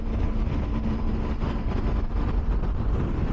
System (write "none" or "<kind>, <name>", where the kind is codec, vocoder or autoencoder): none